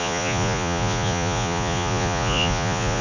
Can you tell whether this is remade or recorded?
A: remade